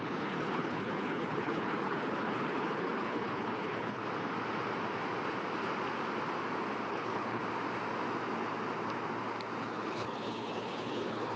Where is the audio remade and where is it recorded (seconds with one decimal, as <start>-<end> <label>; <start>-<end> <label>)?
0.0-4.0 remade; 4.0-6.9 recorded; 6.9-7.4 remade; 7.4-9.6 recorded; 9.6-11.4 remade